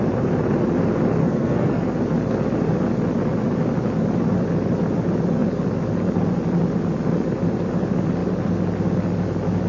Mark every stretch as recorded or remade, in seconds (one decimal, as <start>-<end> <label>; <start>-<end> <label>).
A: 0.0-1.2 recorded; 1.2-1.8 remade; 1.8-9.7 recorded